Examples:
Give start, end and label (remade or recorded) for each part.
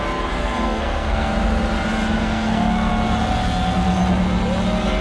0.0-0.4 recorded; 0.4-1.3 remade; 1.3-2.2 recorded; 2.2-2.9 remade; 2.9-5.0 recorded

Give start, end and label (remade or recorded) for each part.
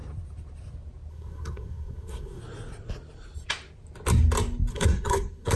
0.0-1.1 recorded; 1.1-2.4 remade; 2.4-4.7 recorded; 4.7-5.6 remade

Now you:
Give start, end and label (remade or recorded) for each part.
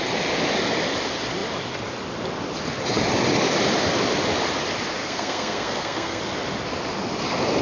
0.0-5.0 recorded; 5.0-6.2 remade; 6.2-7.6 recorded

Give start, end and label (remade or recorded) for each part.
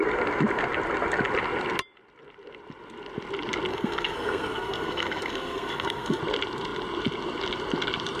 0.0-3.7 recorded; 3.7-6.2 remade; 6.2-8.2 recorded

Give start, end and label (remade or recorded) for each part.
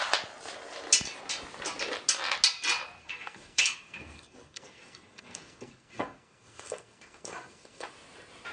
0.0-3.0 recorded; 3.0-7.9 remade; 7.9-8.5 recorded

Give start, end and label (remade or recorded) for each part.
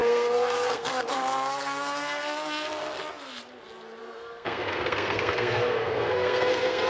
0.0-3.0 remade; 3.0-4.0 recorded; 4.0-6.9 remade